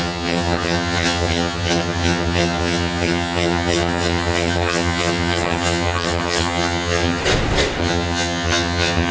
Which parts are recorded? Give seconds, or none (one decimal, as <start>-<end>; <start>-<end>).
7.2-7.8